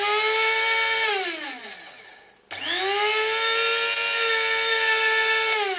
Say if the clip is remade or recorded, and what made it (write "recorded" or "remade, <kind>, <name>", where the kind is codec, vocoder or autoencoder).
recorded